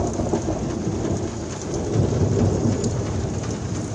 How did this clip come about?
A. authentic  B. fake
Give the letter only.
A